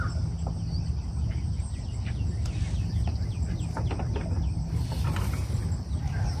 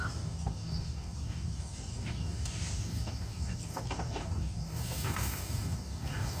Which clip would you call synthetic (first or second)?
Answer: second